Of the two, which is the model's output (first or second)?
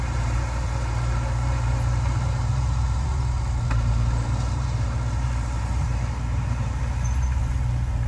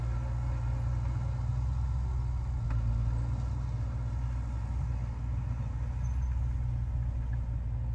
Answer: first